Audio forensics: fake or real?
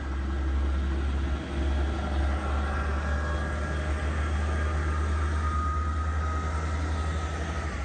real